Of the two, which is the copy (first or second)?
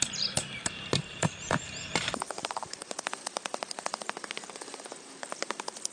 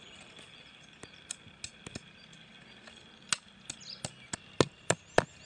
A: first